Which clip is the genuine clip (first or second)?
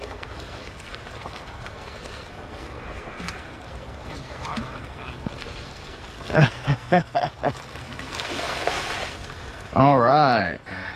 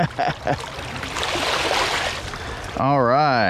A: second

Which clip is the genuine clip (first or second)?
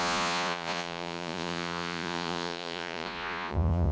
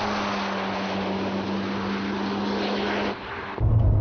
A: second